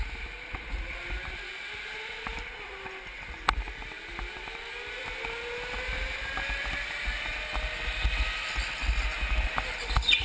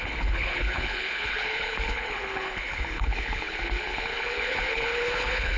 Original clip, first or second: first